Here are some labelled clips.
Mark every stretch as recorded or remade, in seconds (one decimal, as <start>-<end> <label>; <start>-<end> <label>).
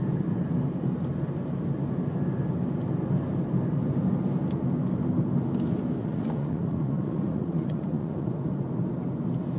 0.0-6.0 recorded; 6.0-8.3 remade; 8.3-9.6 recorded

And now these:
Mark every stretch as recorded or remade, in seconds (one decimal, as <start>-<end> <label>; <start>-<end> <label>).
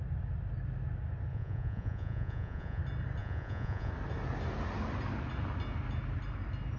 0.0-1.3 recorded; 1.3-2.8 remade; 2.8-3.2 recorded; 3.2-3.9 remade; 3.9-6.8 recorded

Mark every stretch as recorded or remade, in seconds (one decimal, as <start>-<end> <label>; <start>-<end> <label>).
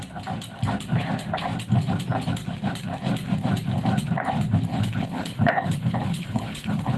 0.0-4.7 recorded; 4.7-7.0 remade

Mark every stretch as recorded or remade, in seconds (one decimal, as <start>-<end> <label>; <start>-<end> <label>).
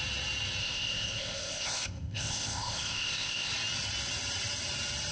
0.0-0.6 recorded; 0.6-3.5 remade; 3.5-5.1 recorded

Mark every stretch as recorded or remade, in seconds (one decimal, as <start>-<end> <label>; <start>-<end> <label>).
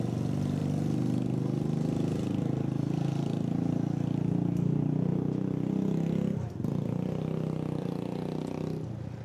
0.0-9.2 recorded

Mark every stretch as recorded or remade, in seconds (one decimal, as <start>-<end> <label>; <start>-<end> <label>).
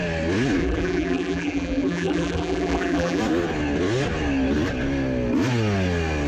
0.0-0.6 recorded; 0.6-3.2 remade; 3.2-6.3 recorded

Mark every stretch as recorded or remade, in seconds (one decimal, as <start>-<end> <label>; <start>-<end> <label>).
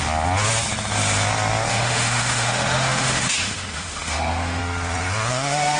0.0-1.7 recorded; 1.7-4.6 remade; 4.6-5.3 recorded; 5.3-5.8 remade